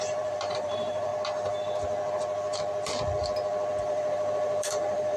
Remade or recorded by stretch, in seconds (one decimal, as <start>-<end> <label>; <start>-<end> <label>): 0.0-1.1 remade; 1.1-3.8 recorded; 3.8-5.2 remade